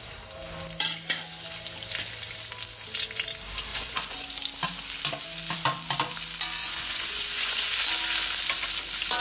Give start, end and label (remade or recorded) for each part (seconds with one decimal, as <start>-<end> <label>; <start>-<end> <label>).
0.0-3.7 recorded; 3.7-4.3 remade; 4.3-6.6 recorded; 6.6-7.7 remade; 7.7-9.2 recorded